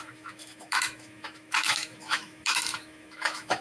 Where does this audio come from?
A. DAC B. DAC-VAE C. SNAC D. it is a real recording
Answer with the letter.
B